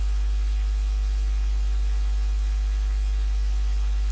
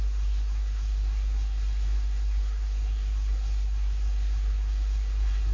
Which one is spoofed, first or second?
second